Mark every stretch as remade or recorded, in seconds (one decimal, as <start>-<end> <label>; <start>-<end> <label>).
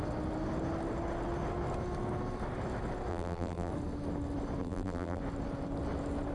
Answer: 0.0-3.1 recorded; 3.1-3.7 remade; 3.7-4.6 recorded; 4.6-5.2 remade; 5.2-6.3 recorded